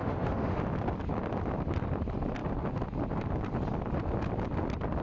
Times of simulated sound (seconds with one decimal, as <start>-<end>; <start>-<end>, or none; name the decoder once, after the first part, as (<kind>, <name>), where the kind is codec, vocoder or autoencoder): 0.0-0.6 (autoencoder, DAC-VAE)